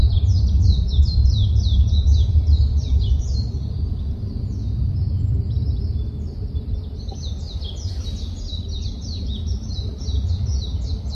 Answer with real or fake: real